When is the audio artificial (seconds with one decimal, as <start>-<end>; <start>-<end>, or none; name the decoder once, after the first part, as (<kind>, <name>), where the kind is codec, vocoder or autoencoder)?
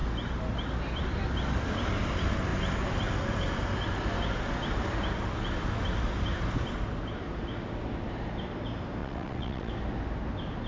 9.0-9.7 (vocoder, WaveNeXt)